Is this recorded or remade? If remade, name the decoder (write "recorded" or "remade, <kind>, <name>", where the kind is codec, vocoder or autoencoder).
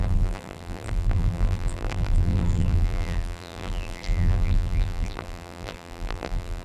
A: remade, vocoder, BigVGAN v2